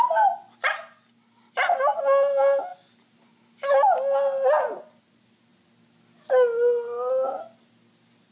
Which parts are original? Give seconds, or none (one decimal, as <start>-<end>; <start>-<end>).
0.0-8.3